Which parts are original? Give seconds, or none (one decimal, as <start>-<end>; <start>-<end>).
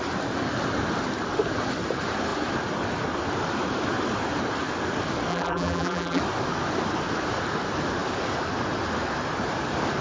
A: 0.0-5.3; 6.2-10.0